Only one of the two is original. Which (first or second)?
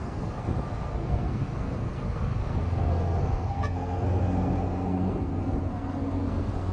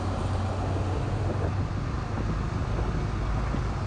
second